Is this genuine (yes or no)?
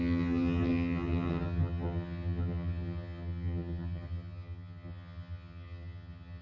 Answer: no